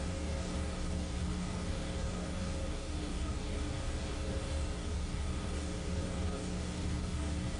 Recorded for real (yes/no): no